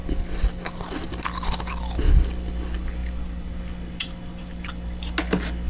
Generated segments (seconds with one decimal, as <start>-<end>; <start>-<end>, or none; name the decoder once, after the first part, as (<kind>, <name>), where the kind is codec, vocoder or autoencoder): none